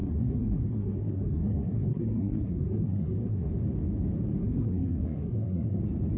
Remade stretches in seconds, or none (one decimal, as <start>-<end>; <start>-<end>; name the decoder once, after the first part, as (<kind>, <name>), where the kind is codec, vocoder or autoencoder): 0.0-3.5 (codec, SNAC); 4.4-5.8